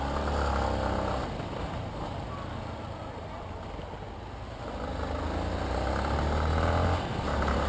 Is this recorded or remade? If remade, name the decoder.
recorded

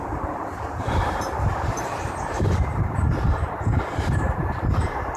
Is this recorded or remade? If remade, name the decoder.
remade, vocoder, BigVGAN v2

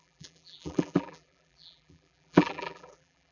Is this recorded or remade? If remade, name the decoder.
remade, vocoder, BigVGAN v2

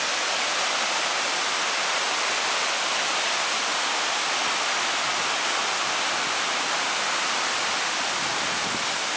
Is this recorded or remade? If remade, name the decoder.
recorded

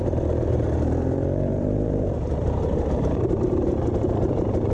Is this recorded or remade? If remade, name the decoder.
remade, vocoder, BigVGAN v2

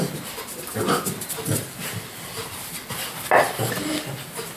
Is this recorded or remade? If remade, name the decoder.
recorded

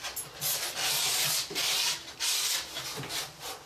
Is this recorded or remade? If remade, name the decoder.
recorded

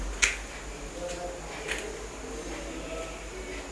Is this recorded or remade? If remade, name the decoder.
recorded